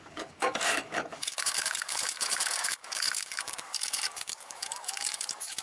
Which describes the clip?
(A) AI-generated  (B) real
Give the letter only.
A